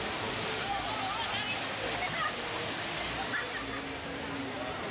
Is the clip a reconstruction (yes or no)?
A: no